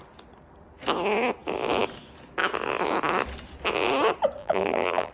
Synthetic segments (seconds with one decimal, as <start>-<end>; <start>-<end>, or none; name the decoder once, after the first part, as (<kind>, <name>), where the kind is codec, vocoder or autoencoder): 4.4-5.1 (vocoder, BigVGAN v2)